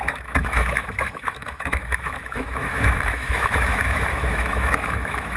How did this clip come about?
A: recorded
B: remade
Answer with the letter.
B